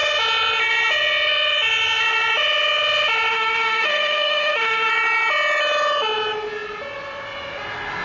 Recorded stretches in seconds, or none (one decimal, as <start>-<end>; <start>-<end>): 0.0-3.3; 4.9-8.0